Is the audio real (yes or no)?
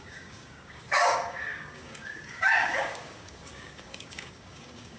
no